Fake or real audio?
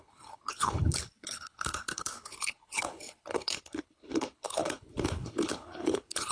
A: fake